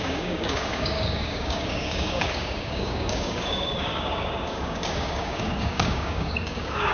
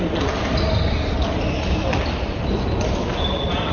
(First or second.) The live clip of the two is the second